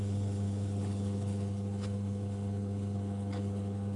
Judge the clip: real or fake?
fake